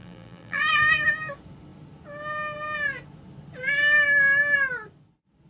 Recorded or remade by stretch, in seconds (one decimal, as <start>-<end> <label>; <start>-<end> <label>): 0.0-0.6 remade; 0.6-5.5 recorded